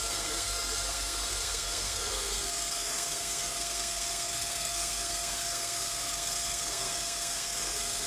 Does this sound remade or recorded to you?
remade